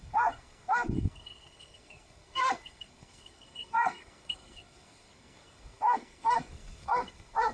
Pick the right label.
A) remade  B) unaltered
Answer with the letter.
A